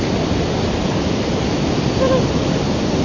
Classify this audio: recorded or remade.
recorded